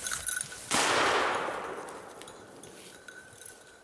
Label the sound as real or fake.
real